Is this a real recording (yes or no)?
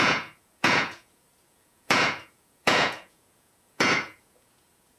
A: no